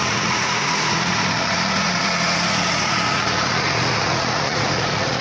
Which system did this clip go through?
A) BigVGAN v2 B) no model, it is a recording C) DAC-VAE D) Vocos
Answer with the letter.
D